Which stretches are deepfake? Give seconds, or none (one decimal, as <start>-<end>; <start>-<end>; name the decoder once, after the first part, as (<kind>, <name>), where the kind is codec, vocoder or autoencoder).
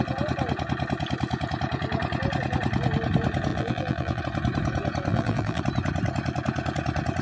3.5-4.2 (vocoder, BigVGAN v2); 5.1-5.6